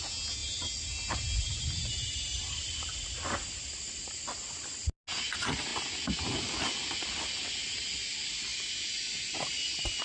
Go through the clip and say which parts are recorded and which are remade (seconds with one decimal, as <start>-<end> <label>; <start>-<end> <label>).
0.0-0.4 recorded; 0.4-4.1 remade; 4.1-8.5 recorded; 8.5-10.0 remade